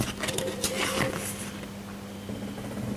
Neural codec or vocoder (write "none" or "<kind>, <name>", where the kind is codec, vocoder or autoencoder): none